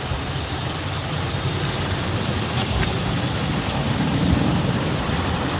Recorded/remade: remade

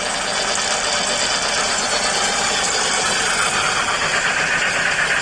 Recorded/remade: recorded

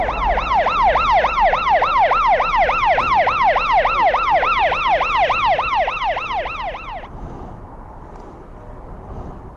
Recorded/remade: recorded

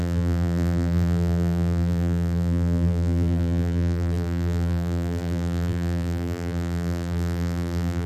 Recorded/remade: remade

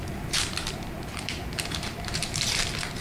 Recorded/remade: remade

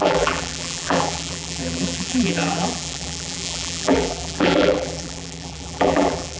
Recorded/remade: remade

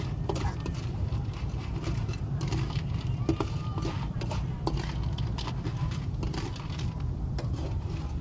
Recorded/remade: remade